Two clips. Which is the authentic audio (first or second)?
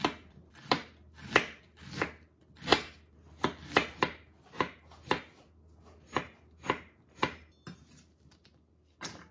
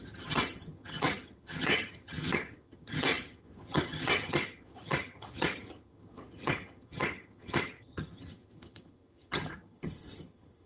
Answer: first